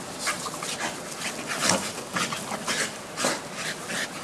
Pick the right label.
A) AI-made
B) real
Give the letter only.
B